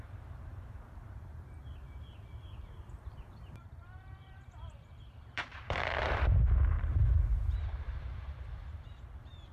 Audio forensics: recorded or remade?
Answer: remade